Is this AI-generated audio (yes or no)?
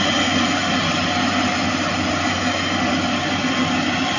no